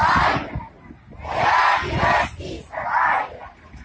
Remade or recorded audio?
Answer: recorded